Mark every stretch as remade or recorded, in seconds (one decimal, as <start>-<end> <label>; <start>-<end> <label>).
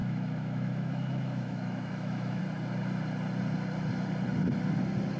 0.0-2.4 remade; 2.4-5.2 recorded